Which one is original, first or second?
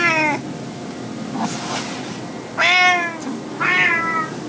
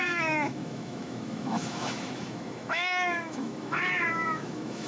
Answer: first